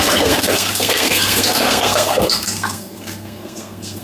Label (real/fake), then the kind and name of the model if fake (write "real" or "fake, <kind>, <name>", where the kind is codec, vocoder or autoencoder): fake, codec, SNAC